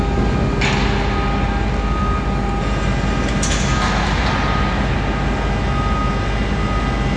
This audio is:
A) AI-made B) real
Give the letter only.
B